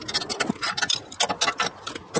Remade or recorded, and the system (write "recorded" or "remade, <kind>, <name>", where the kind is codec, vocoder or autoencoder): recorded